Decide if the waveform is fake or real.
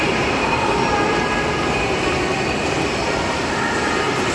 fake